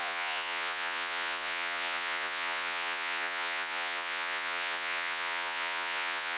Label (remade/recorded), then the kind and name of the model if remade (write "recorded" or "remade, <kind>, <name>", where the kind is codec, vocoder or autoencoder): remade, vocoder, Vocos